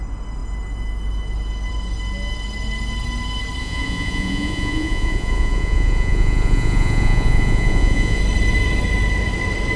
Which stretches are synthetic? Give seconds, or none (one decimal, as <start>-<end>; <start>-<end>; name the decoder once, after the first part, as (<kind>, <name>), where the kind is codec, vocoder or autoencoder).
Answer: 3.6-8.2 (vocoder, Vocos)